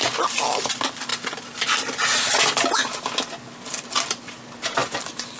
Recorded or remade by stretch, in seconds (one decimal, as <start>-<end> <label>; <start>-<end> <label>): 0.0-5.4 recorded